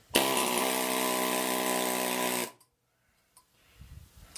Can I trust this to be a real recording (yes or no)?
yes